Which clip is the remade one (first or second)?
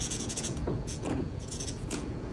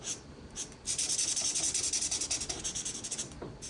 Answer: first